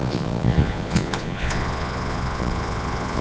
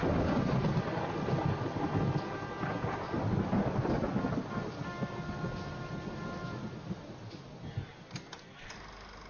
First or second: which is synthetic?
first